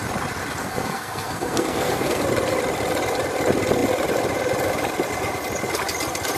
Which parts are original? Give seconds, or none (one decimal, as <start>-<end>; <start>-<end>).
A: 0.0-0.6; 2.2-6.4